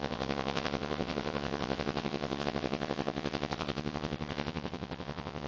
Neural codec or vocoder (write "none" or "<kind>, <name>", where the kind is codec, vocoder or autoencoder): vocoder, WaveNeXt